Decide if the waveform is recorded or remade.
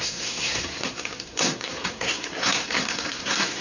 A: remade